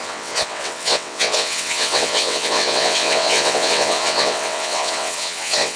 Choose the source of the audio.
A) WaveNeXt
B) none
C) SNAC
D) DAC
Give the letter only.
A